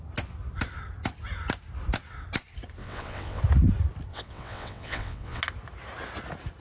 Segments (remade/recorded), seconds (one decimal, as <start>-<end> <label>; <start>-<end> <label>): 0.0-2.8 recorded; 2.8-3.4 remade; 3.4-4.1 recorded; 4.1-5.4 remade; 5.4-6.6 recorded